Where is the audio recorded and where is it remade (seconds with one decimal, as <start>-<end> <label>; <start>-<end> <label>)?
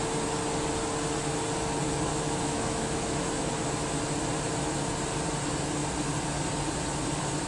0.0-2.1 recorded; 2.1-3.5 remade; 3.5-7.5 recorded